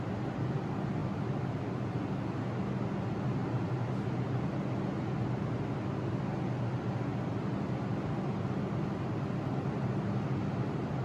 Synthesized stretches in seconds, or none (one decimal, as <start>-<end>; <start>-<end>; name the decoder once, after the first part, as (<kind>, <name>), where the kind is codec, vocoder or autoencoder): 1.0-2.0 (vocoder, BigVGAN v2); 3.4-3.9; 7.1-11.0